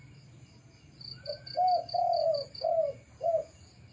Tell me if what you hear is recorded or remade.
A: recorded